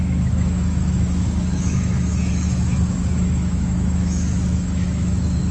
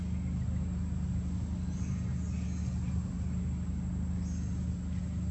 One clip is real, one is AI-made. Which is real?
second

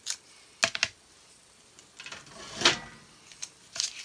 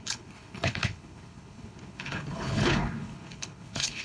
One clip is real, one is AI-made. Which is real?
first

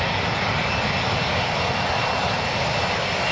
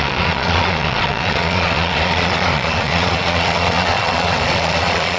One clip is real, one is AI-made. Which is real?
first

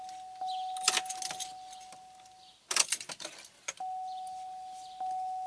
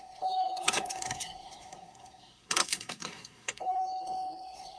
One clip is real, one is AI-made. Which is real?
first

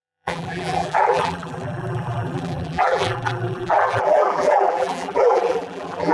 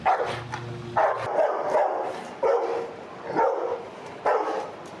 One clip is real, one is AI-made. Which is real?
second